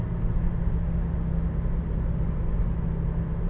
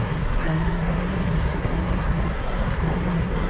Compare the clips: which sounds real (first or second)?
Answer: first